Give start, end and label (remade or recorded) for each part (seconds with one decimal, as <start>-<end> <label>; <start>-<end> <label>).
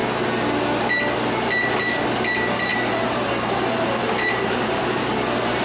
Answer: 0.0-2.7 recorded; 2.7-3.3 remade; 3.3-4.0 recorded; 4.0-4.8 remade; 4.8-5.6 recorded